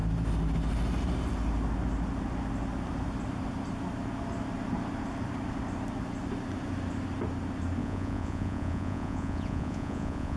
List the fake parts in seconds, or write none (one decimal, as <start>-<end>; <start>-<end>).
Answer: 7.8-10.4